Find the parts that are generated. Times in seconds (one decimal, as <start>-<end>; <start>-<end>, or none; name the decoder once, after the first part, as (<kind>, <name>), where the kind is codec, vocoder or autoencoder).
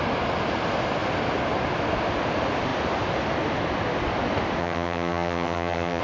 4.6-6.0 (vocoder, HiFi-GAN)